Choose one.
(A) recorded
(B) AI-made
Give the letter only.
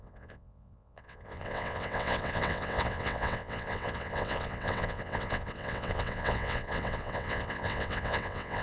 B